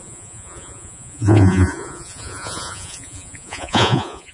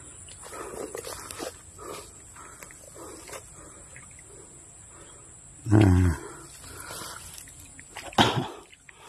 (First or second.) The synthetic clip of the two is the first